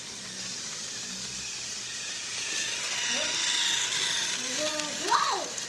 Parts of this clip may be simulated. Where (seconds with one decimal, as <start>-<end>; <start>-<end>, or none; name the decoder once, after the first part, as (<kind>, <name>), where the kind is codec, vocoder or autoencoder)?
1.9-2.5 (vocoder, Vocos)